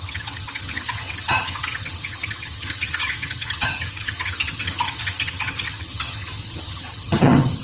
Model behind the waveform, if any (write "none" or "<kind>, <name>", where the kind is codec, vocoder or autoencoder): vocoder, HiFi-GAN